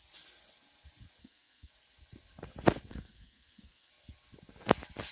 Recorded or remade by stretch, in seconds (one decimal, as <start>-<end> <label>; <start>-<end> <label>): 0.0-1.2 recorded; 1.2-1.7 remade; 1.7-2.9 recorded; 2.9-3.9 remade; 3.9-5.1 recorded